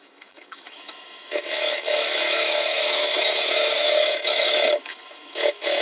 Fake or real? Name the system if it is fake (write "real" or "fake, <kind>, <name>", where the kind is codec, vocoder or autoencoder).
fake, autoencoder, DAC-VAE